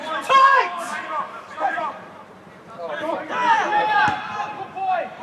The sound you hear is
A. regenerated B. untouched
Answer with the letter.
A